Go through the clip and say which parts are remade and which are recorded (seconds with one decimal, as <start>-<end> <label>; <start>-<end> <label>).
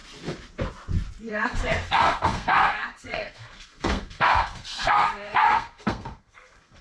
0.0-1.2 recorded; 1.2-6.8 remade